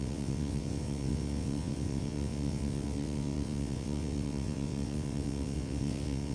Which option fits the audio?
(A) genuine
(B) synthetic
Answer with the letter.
B